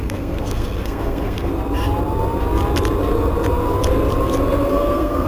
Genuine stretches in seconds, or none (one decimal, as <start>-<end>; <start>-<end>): 1.5-4.7